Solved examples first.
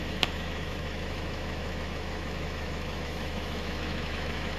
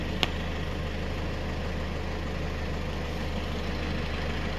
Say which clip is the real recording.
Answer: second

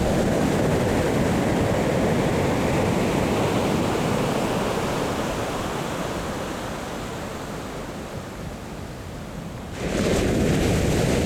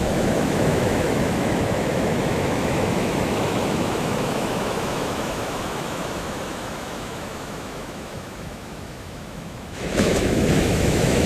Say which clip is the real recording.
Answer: first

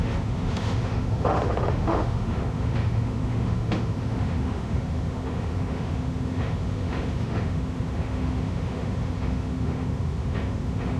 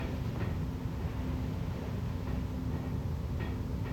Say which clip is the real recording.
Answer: second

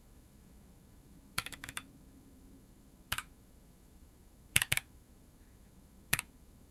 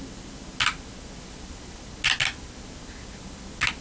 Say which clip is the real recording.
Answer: second